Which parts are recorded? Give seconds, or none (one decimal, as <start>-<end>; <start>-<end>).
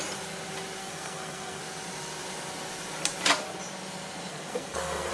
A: 0.0-0.8; 1.6-4.3